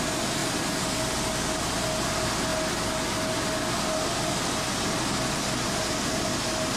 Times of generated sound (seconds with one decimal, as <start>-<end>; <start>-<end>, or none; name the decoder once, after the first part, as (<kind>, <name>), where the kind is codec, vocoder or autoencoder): none